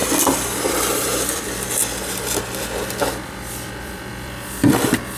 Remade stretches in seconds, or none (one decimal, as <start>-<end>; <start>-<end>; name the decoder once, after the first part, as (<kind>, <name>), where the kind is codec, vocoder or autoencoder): 2.9-5.2 (vocoder, BigVGAN v2)